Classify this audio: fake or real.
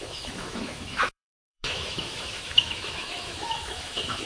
fake